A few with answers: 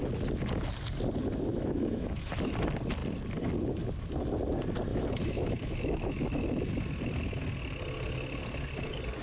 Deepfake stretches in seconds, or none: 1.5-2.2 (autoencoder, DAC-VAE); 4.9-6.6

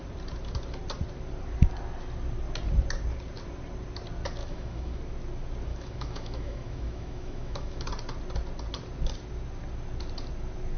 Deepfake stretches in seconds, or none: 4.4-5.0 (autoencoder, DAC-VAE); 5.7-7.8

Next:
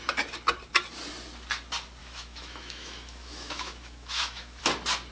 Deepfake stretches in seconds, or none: 2.0-4.6 (autoencoder, DAC-VAE)

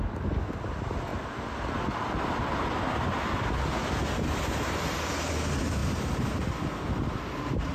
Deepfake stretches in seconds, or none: none

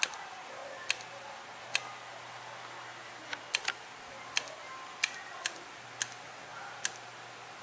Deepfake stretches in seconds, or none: none

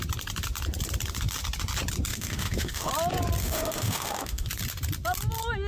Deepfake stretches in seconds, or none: 2.1-2.9 (autoencoder, DAC-VAE); 3.4-4.5